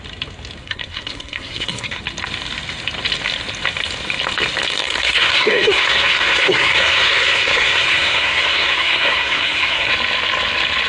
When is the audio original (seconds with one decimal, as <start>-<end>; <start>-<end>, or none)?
0.0-0.6; 2.0-4.8; 9.9-10.9